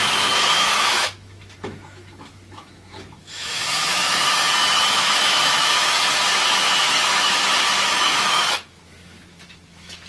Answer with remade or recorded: remade